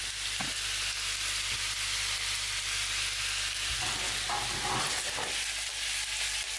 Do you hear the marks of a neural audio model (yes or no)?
no